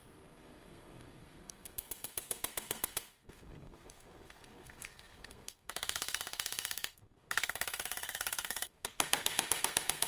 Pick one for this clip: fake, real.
fake